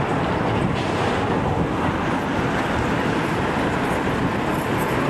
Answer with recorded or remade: recorded